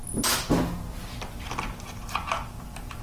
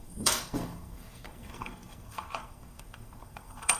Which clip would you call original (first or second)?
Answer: first